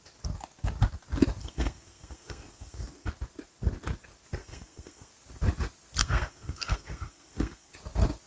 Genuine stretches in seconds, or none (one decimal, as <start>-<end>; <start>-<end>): 0.0-1.4; 3.1-4.4; 5.1-6.0; 7.7-8.3